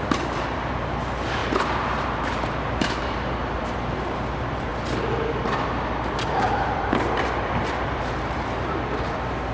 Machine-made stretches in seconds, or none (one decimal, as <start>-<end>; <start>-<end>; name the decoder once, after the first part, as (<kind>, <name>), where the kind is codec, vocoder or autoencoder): 0.0-4.7 (vocoder, BigVGAN v2); 6.3-9.5